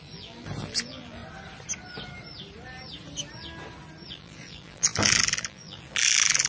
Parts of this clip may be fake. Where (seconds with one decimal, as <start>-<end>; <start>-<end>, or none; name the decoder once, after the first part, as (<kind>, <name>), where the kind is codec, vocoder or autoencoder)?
0.0-1.2 (vocoder, BigVGAN v2); 4.1-6.5